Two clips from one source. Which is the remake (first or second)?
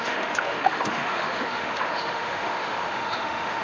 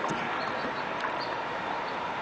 first